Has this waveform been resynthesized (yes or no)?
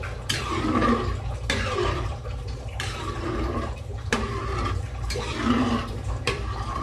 yes